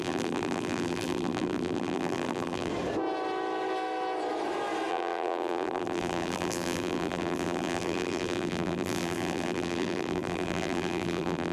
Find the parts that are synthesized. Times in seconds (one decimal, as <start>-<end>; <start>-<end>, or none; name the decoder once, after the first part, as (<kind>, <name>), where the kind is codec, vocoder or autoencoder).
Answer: 0.0-2.7 (vocoder, BigVGAN v2); 4.9-11.5